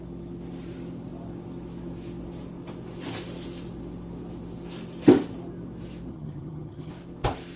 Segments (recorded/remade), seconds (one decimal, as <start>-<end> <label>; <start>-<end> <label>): 0.0-6.1 recorded; 6.1-6.9 remade; 6.9-7.6 recorded